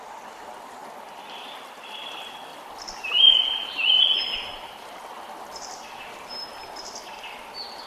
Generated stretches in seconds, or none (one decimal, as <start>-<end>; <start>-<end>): 0.8-1.6; 2.5-7.0